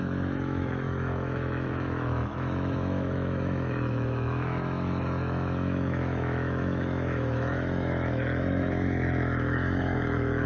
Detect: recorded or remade remade